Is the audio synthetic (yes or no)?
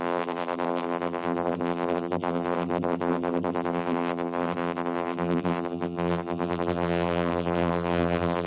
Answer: yes